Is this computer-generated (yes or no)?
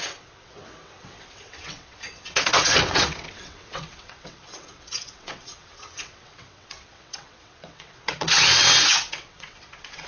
yes